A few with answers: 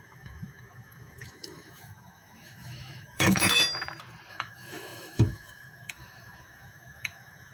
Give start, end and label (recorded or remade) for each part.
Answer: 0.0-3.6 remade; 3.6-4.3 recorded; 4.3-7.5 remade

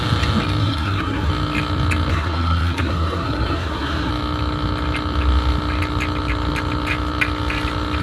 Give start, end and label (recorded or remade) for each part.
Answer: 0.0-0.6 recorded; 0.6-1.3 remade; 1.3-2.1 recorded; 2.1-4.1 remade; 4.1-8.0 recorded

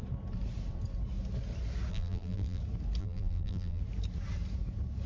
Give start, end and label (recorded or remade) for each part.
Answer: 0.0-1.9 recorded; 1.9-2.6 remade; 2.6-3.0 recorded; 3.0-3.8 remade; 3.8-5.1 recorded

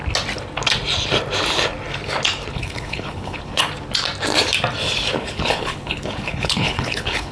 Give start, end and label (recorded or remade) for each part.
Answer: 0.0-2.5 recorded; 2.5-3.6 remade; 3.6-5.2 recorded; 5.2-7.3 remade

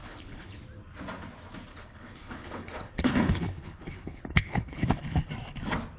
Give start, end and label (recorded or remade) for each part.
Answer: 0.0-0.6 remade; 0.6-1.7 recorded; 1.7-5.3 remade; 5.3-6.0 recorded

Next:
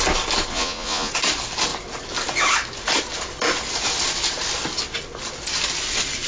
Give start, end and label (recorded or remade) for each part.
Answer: 0.0-0.5 recorded; 0.5-1.1 remade; 1.1-6.3 recorded

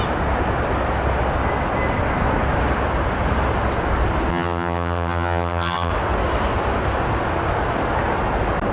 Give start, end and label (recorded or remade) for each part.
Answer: 0.0-4.3 recorded; 4.3-5.9 remade; 5.9-8.7 recorded

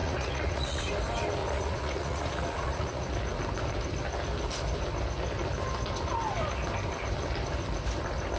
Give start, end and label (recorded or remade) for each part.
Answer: 0.0-0.9 remade; 0.9-1.4 recorded; 1.4-3.1 remade; 3.1-8.4 recorded